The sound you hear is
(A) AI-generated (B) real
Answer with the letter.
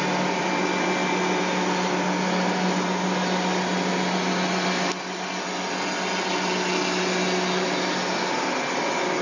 B